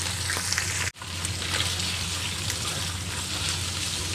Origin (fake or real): real